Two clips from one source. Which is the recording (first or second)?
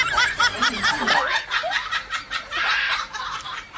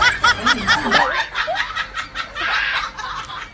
second